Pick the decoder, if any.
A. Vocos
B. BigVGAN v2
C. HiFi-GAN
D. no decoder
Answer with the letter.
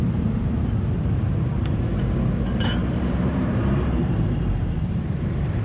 B